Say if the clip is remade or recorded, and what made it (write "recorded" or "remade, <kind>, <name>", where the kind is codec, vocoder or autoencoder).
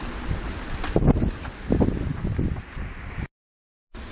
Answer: recorded